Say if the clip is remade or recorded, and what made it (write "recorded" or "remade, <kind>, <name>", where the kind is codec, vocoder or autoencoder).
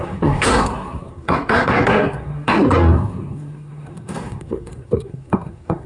remade, codec, SNAC